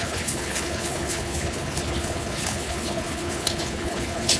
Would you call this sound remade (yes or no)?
yes